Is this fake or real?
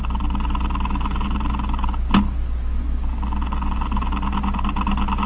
real